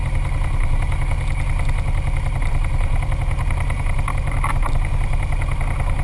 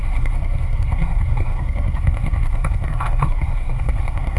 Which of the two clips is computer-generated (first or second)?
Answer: second